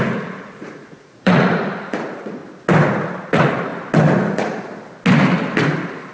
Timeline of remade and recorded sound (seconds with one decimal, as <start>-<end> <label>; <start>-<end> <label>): 0.0-2.4 remade; 2.4-3.2 recorded; 3.2-3.7 remade; 3.7-4.3 recorded; 4.3-4.7 remade; 4.7-6.1 recorded